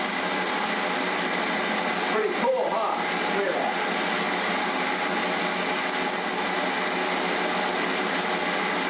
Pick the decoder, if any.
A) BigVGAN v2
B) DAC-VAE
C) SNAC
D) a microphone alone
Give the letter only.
D